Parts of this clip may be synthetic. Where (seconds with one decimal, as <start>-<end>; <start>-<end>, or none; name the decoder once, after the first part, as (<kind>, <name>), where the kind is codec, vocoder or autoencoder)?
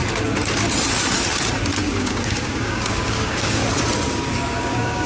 1.8-3.6 (codec, DAC); 4.3-5.1